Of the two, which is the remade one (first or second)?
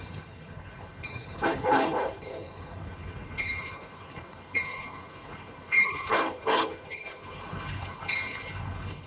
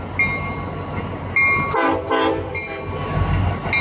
first